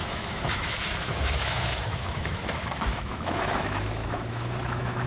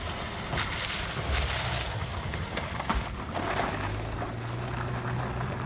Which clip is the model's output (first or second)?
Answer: first